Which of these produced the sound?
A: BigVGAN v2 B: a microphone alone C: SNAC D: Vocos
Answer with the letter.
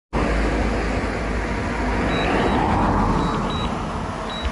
B